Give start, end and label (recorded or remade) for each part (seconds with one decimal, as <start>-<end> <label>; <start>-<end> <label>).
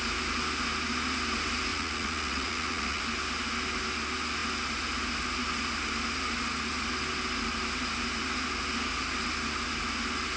0.0-1.7 recorded; 1.7-3.0 remade; 3.0-10.4 recorded